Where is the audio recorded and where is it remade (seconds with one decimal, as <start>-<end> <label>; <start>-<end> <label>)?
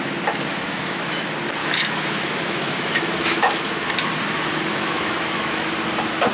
0.0-0.5 recorded; 0.5-1.1 remade; 1.1-1.6 recorded; 1.6-3.9 remade; 3.9-4.7 recorded; 4.7-5.7 remade; 5.7-6.3 recorded